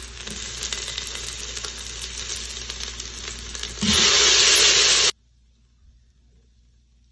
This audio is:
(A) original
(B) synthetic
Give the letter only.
A